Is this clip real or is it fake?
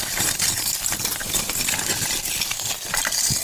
real